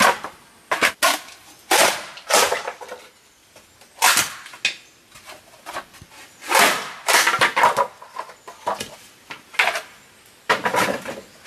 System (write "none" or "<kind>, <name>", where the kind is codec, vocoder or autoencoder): none